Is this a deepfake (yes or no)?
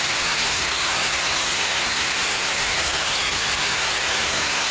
yes